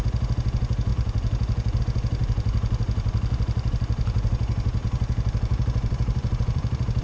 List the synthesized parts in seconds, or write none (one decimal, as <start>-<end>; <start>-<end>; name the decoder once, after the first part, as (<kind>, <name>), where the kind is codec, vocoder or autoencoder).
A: 0.9-1.8 (vocoder, BigVGAN v2); 2.2-4.3; 4.8-7.0